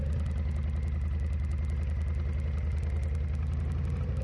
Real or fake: real